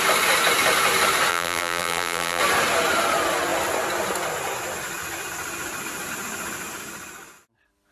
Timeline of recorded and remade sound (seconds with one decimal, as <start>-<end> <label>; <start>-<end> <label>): 0.0-1.3 recorded; 1.3-2.4 remade; 2.4-7.9 recorded